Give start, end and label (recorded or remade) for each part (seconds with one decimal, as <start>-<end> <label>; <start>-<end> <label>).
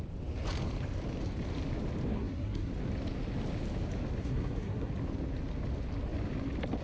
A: 0.0-2.1 recorded; 2.1-2.7 remade; 2.7-4.2 recorded; 4.2-4.9 remade; 4.9-6.8 recorded